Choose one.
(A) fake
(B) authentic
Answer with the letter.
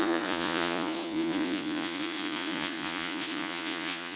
A